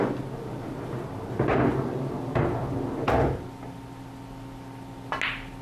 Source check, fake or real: real